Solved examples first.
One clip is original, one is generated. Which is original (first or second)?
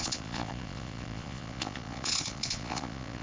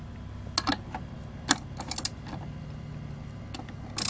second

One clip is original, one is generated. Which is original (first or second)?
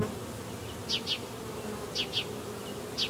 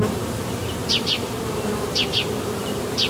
first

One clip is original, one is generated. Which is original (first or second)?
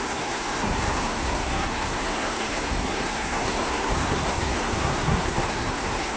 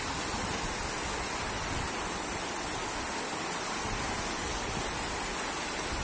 second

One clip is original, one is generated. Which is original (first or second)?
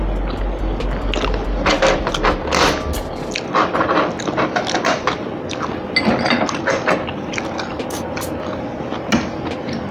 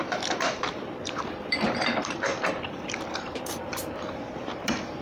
first